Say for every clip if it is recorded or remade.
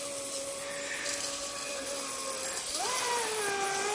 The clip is recorded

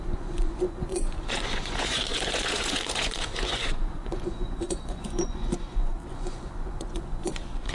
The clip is remade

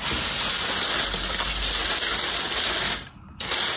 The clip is recorded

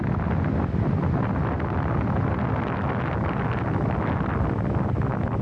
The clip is recorded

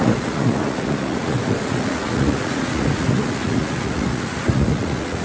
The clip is remade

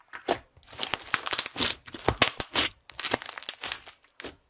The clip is recorded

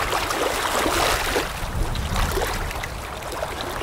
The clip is recorded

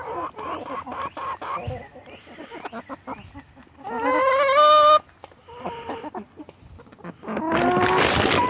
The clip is recorded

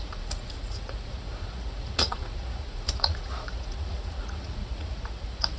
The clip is remade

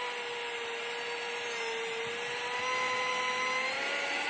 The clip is recorded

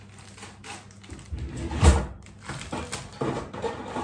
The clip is recorded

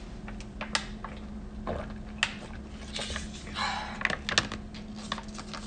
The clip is recorded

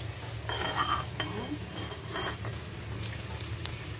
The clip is recorded